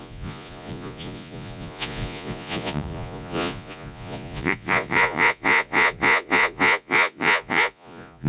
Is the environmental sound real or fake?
fake